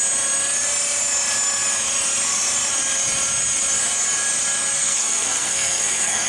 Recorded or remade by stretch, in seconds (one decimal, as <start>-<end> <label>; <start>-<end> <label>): 0.0-4.8 recorded; 4.8-6.3 remade